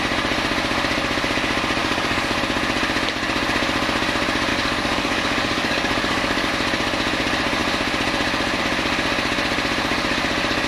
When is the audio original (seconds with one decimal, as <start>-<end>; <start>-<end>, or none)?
0.0-1.8; 2.4-4.5; 6.5-10.7

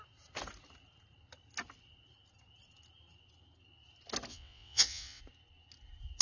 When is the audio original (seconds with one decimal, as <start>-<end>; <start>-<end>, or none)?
0.0-4.3; 5.2-6.2

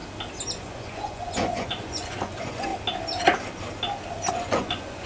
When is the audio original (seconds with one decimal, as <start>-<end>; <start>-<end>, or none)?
0.0-0.6; 2.7-4.3

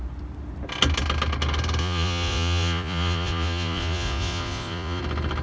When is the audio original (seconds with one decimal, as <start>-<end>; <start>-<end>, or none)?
0.0-1.8; 5.0-5.4

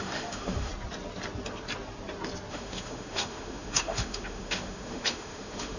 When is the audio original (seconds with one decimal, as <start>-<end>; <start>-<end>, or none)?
0.7-2.5

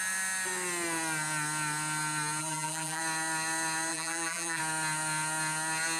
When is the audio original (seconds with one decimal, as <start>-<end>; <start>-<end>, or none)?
0.0-2.4; 3.0-3.9; 4.6-6.0